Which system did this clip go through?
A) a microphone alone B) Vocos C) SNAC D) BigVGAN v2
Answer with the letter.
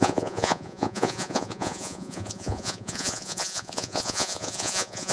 B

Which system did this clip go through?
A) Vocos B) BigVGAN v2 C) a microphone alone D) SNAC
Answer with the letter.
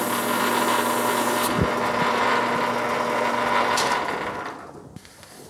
C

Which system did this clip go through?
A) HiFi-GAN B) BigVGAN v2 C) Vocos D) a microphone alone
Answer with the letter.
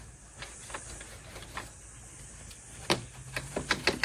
D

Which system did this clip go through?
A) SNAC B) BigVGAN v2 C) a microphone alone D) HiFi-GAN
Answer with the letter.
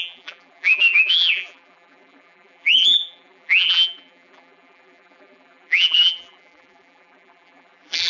B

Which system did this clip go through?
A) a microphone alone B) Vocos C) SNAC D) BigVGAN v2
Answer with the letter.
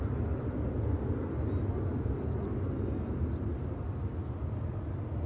A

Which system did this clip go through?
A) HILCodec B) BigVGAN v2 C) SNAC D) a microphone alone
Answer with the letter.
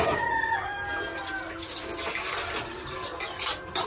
D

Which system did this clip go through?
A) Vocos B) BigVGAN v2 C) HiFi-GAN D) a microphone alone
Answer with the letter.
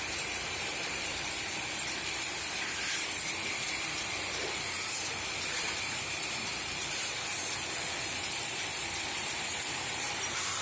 B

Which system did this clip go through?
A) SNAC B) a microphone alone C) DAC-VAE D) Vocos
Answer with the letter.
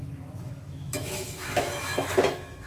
C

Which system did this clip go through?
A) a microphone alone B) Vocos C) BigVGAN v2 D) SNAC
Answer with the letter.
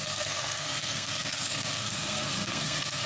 D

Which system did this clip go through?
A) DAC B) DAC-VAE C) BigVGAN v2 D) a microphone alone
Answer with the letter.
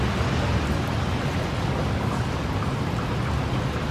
D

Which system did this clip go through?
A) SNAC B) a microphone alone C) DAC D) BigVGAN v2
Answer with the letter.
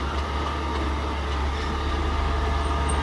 B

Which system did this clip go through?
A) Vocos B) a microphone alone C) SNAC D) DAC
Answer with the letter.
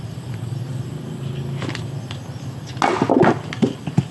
B